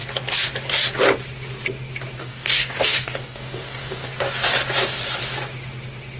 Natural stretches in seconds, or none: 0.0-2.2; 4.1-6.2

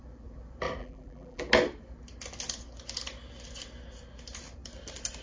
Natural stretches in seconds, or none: 0.0-0.8; 1.4-5.2